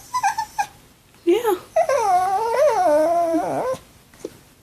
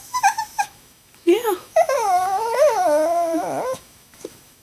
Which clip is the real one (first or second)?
first